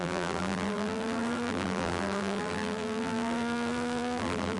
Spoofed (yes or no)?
yes